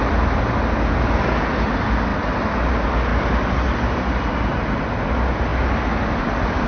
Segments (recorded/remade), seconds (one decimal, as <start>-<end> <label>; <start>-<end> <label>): 0.0-3.1 recorded; 3.1-3.8 remade; 3.8-6.7 recorded